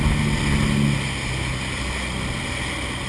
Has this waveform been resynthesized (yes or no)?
no